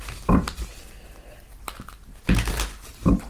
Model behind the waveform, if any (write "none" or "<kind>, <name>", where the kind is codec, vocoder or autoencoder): none